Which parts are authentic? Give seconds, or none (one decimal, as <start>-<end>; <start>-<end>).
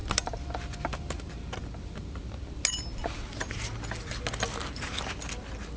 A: 0.0-5.8